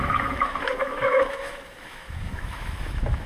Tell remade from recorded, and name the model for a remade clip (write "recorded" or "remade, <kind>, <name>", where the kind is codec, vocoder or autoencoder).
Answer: remade, autoencoder, DAC-VAE